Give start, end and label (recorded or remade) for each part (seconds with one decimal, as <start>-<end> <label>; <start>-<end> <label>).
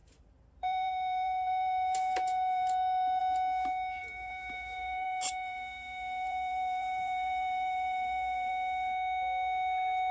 0.0-3.2 remade; 3.2-4.0 recorded; 4.0-8.5 remade; 8.5-10.1 recorded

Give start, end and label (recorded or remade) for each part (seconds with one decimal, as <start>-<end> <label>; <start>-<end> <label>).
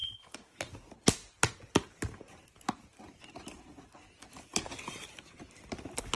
0.0-6.2 recorded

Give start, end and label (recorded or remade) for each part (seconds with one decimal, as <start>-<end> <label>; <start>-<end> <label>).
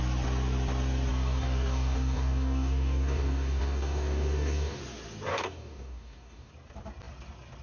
0.0-1.1 recorded; 1.1-4.8 remade; 4.8-5.3 recorded; 5.3-6.5 remade; 6.5-7.6 recorded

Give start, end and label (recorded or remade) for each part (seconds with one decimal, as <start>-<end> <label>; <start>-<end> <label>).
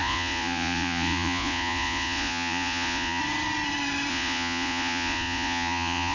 0.0-3.2 remade; 3.2-4.1 recorded; 4.1-6.1 remade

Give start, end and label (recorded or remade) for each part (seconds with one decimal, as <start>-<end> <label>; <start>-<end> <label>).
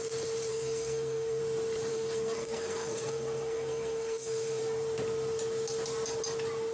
0.0-0.5 recorded; 0.5-1.4 remade; 1.4-1.9 recorded; 1.9-4.6 remade; 4.6-6.7 recorded